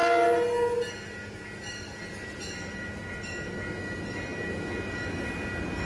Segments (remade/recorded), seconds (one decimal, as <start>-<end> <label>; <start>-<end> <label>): 0.0-5.9 recorded

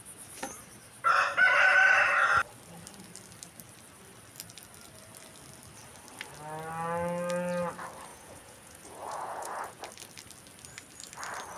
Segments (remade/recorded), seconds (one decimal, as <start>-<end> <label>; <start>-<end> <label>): 0.0-8.1 recorded; 8.1-9.8 remade; 9.8-11.6 recorded

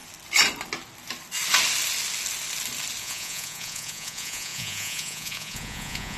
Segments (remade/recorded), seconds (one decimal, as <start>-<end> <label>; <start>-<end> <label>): 0.0-3.0 recorded; 3.0-6.2 remade